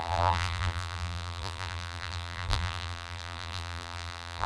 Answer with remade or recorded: remade